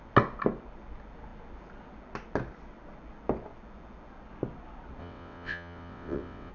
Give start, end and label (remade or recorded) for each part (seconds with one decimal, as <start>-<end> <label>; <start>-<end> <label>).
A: 0.0-5.0 recorded; 5.0-6.5 remade